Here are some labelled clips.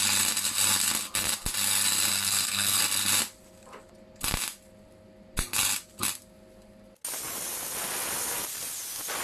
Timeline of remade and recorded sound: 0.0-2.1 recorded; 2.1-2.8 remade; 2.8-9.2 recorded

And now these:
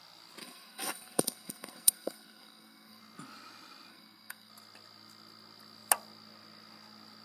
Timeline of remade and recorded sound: 0.0-0.4 recorded; 0.4-3.0 remade; 3.0-3.9 recorded; 3.9-4.5 remade; 4.5-7.2 recorded

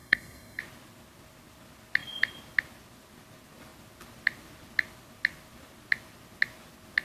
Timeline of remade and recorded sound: 0.0-0.6 remade; 0.6-7.0 recorded

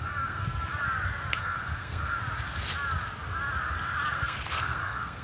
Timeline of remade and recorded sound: 0.0-0.4 remade; 0.4-1.4 recorded; 1.4-2.2 remade; 2.2-4.1 recorded; 4.1-5.2 remade